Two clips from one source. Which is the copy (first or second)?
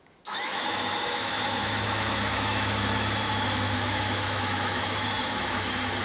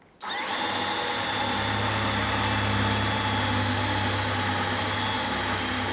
first